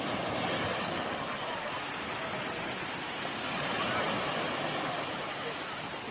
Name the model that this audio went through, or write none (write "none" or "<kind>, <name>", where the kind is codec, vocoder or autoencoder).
none